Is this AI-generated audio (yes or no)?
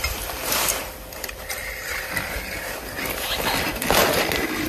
no